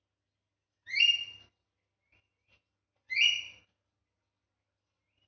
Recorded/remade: recorded